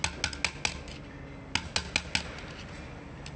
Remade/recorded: recorded